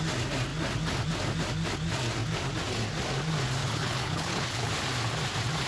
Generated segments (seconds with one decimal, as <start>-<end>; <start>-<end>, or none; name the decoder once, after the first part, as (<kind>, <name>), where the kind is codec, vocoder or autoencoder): 3.6-4.7 (codec, HILCodec)